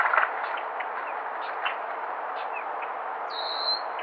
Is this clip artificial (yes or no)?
no